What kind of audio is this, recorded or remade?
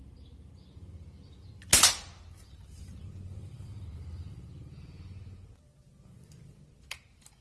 remade